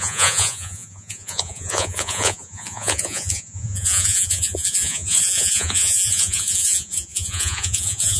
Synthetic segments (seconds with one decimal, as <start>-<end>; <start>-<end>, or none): 0.0-8.2